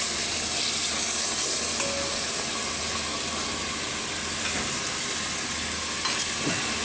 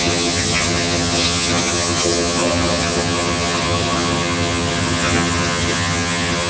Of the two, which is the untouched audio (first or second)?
first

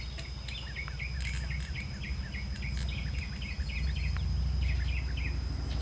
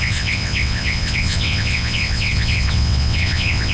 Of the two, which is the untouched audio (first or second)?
first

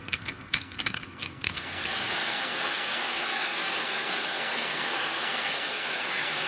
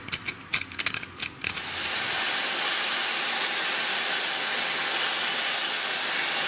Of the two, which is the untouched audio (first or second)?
second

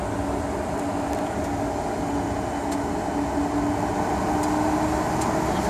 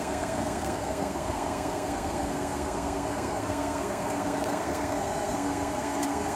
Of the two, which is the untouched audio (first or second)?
first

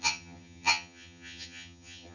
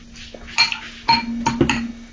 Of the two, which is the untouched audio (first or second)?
second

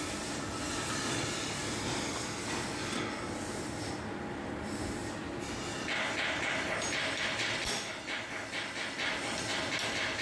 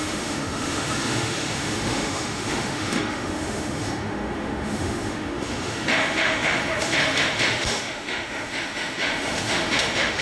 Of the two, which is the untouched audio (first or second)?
first